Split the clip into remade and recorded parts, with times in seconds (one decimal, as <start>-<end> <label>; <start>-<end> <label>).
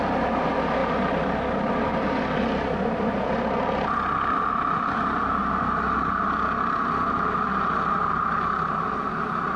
0.0-9.6 recorded